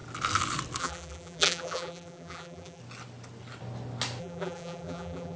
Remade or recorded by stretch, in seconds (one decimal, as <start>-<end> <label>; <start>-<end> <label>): 0.0-0.8 recorded; 0.8-2.8 remade; 2.8-4.2 recorded; 4.2-5.4 remade